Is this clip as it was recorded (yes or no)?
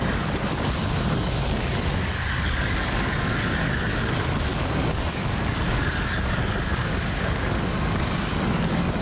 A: no